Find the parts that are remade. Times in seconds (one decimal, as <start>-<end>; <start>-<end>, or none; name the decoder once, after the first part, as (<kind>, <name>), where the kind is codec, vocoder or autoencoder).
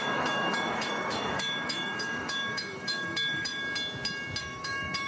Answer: 0.0-3.6 (autoencoder, DAC-VAE); 4.4-5.1